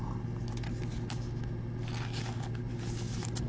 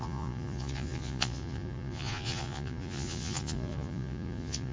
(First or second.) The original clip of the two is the first